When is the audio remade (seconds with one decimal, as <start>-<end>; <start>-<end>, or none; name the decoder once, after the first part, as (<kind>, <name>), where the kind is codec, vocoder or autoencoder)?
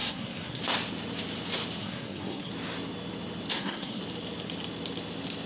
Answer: 0.0-0.6 (codec, SNAC); 1.8-2.5; 3.5-4.0